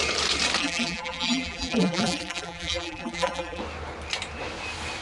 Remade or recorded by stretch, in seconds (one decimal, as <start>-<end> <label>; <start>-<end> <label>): 0.0-0.6 recorded; 0.6-3.6 remade; 3.6-5.0 recorded